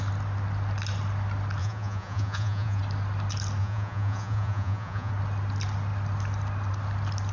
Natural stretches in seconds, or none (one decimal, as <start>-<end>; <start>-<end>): 0.0-1.6; 2.8-3.6; 5.1-7.3